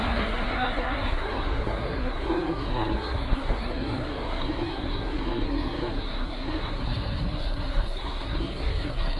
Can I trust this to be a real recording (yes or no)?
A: no